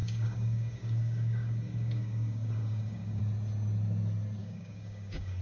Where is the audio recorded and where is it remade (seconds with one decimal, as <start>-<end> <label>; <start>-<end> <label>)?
0.0-3.2 remade; 3.2-4.4 recorded; 4.4-5.4 remade